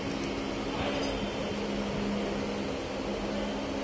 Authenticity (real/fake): real